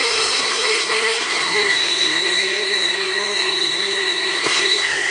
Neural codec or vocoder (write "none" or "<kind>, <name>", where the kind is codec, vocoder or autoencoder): codec, SNAC